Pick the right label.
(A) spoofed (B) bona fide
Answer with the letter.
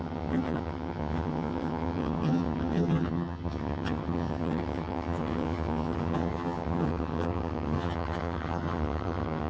A